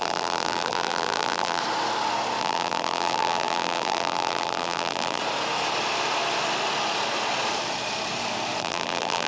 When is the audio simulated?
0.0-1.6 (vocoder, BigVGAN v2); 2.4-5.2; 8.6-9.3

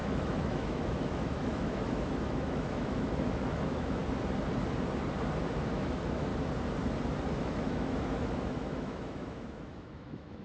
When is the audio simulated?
0.0-4.0 (autoencoder, DAC-VAE); 5.7-6.3; 7.4-10.4

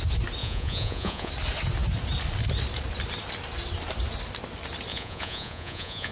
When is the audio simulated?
0.4-1.3 (vocoder, Vocos); 4.9-6.1

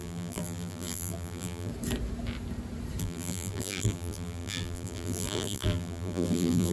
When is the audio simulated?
0.0-1.7 (vocoder, BigVGAN v2); 3.0-6.7

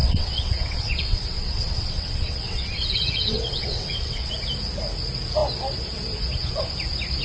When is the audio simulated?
0.0-4.3 (vocoder, WaveNeXt)

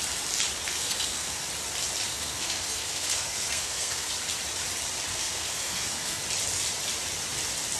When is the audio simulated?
0.7-1.4 (codec, SNAC); 2.1-4.1; 5.1-6.2